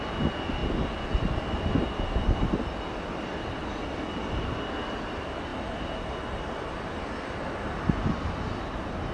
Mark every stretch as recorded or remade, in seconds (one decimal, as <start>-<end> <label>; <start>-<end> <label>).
0.0-9.1 recorded